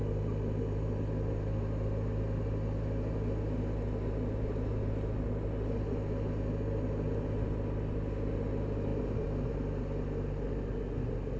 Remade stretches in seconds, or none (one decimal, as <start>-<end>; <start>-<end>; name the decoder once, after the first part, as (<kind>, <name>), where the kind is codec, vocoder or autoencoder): none